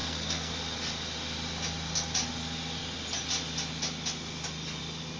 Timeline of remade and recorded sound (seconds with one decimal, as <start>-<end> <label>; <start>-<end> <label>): 0.0-0.5 remade; 0.5-5.2 recorded